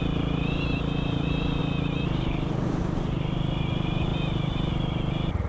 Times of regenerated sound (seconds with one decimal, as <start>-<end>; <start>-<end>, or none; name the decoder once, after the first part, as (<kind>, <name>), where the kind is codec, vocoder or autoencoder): none